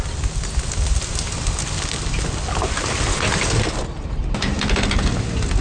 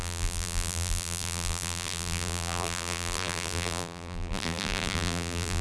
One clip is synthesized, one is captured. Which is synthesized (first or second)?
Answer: second